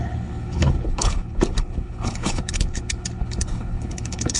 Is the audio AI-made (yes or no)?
yes